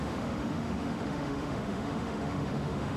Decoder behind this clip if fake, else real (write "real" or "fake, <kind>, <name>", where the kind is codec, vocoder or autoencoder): fake, autoencoder, DAC-VAE